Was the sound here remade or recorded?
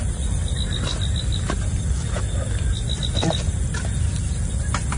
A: recorded